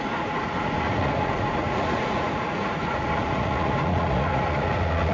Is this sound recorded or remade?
remade